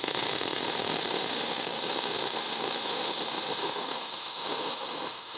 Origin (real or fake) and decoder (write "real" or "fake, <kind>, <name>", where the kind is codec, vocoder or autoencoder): fake, autoencoder, DAC-VAE